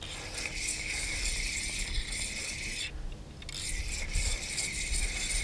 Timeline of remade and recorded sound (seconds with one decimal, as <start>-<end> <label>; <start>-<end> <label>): 0.0-0.7 recorded; 0.7-1.3 remade; 1.3-5.4 recorded